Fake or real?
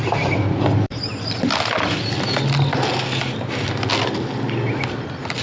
real